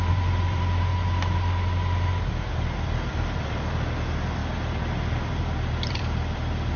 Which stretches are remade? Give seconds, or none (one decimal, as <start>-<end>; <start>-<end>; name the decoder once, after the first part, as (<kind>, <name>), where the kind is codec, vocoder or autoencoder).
0.0-0.9 (vocoder, BigVGAN v2); 2.3-6.8